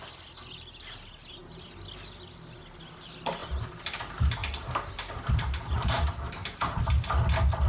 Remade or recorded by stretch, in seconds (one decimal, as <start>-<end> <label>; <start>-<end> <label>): 0.0-3.4 recorded; 3.4-4.0 remade; 4.0-4.4 recorded; 4.4-6.8 remade; 6.8-7.7 recorded